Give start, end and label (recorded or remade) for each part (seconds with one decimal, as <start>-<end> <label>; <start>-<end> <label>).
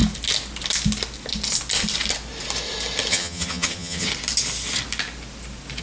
0.0-3.1 recorded; 3.1-4.1 remade; 4.1-5.8 recorded